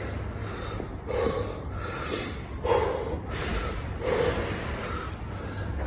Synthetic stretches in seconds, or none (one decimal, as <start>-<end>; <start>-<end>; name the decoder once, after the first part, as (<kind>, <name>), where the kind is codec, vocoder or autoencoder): 3.5-5.2 (vocoder, BigVGAN v2)